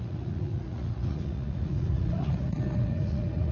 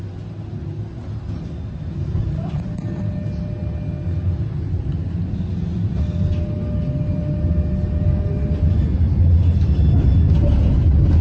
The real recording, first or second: second